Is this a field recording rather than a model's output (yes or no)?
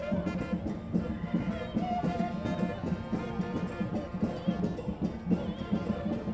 yes